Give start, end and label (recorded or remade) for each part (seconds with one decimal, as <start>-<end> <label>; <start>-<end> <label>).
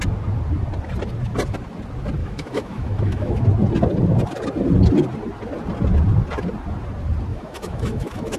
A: 0.0-2.2 recorded; 2.2-3.4 remade; 3.4-7.3 recorded; 7.3-8.4 remade